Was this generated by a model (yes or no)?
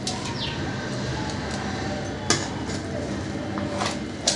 no